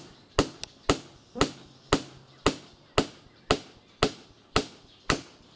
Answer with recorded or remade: recorded